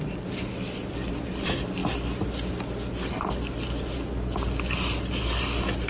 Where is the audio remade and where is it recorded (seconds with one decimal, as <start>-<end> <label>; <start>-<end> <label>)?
0.0-5.9 recorded